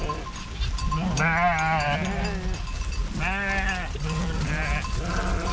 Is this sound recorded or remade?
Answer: recorded